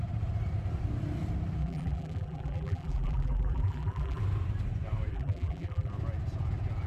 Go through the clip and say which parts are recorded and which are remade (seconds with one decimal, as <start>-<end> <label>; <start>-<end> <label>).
0.0-1.6 recorded; 1.6-4.2 remade; 4.2-5.1 recorded; 5.1-5.9 remade; 5.9-6.9 recorded